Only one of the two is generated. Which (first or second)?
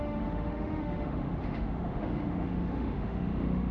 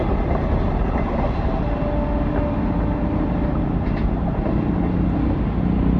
first